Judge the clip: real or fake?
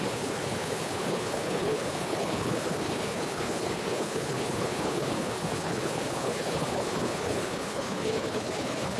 fake